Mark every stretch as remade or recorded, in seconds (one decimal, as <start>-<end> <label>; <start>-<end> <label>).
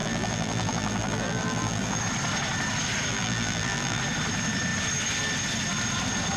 0.0-2.0 remade; 2.0-3.1 recorded; 3.1-4.0 remade; 4.0-6.4 recorded